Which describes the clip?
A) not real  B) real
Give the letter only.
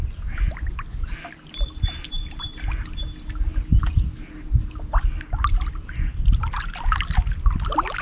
B